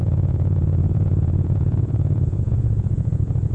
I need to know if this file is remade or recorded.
remade